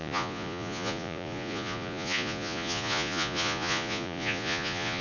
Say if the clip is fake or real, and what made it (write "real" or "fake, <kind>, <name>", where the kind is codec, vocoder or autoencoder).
fake, vocoder, Vocos